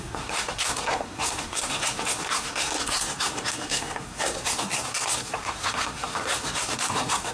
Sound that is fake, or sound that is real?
fake